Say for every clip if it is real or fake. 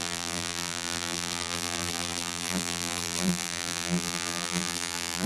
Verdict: fake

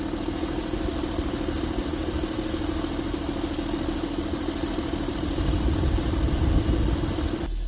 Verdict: fake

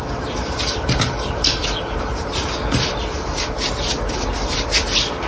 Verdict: fake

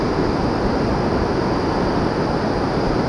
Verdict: real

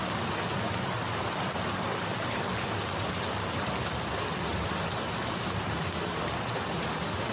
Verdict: real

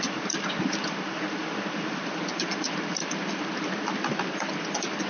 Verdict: real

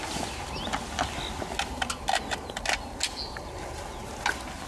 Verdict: real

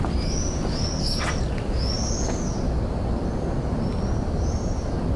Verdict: real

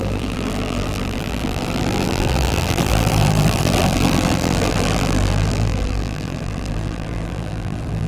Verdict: fake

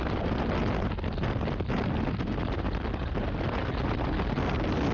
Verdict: real